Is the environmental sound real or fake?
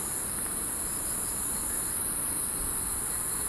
real